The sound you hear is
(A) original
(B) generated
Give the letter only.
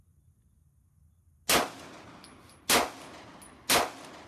A